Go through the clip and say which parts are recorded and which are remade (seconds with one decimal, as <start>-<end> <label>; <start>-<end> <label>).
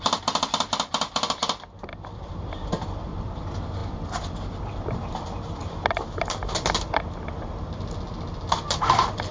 0.0-1.9 recorded; 1.9-3.4 remade; 3.4-3.8 recorded; 3.8-4.5 remade; 4.5-5.6 recorded; 5.6-8.0 remade; 8.0-9.3 recorded